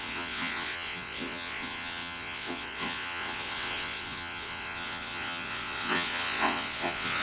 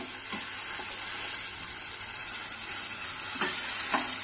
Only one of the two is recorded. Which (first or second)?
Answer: second